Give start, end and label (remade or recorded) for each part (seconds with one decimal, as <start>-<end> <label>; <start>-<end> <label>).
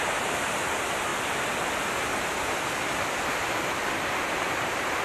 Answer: 0.0-5.0 recorded